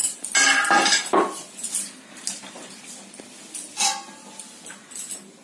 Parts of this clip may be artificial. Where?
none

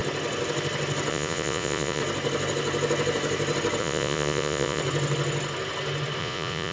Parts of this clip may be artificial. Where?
1.1-2.0 (vocoder, Vocos); 3.8-4.8; 6.2-6.7

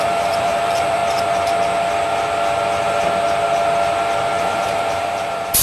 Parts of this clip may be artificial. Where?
0.0-1.0 (vocoder, BigVGAN v2); 4.4-5.6

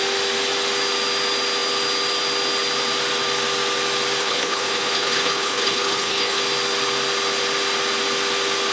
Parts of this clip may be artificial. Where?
4.2-6.4 (codec, HILCodec)